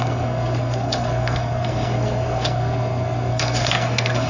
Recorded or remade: remade